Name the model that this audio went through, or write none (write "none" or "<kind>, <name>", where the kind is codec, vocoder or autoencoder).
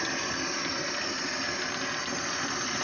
none